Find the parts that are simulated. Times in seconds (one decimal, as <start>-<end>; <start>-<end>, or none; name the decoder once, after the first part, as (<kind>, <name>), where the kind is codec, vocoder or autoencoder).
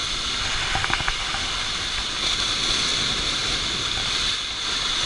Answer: none